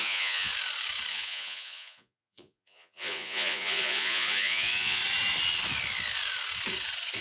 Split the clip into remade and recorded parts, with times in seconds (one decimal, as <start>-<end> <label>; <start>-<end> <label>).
0.0-0.5 remade; 0.5-1.1 recorded; 1.1-5.0 remade; 5.0-7.2 recorded